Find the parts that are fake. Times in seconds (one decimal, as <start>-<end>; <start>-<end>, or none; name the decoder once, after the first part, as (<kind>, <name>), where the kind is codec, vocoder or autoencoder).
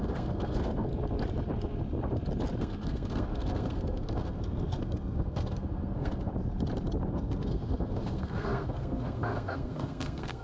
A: 0.0-0.9 (codec, SNAC); 2.6-6.3; 7.1-10.4